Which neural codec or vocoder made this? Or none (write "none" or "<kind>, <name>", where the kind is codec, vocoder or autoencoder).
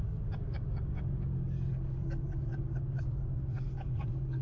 codec, DAC